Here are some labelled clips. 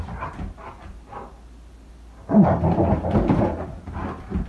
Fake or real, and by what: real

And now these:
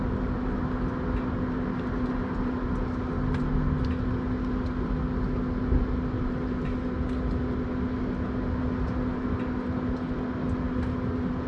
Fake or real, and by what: real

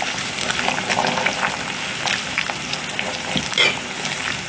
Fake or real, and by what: real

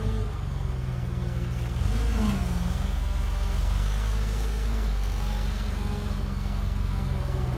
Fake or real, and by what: fake, codec, SNAC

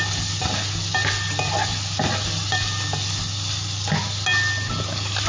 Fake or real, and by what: real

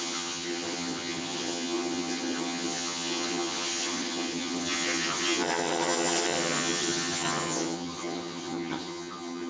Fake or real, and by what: fake, vocoder, HiFi-GAN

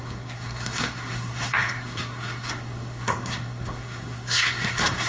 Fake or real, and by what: fake, codec, SNAC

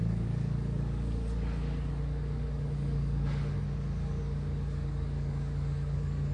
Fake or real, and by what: fake, codec, DAC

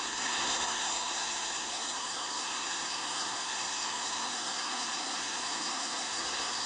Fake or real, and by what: fake, codec, SNAC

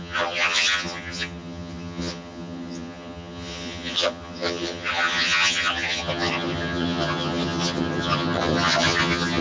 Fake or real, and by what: fake, vocoder, HiFi-GAN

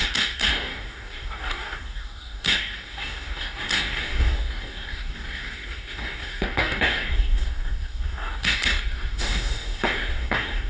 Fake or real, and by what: fake, codec, DAC